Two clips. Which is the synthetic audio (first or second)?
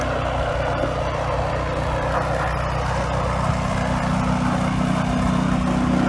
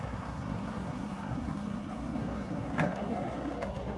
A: second